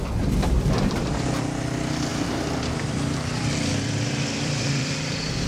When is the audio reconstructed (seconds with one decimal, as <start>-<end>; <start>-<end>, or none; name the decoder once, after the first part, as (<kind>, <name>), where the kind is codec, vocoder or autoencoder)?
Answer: 0.0-1.4 (vocoder, BigVGAN v2); 2.1-4.9